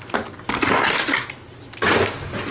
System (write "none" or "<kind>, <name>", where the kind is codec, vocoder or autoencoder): none